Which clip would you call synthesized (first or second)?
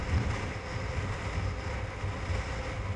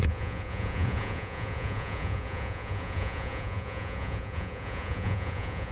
second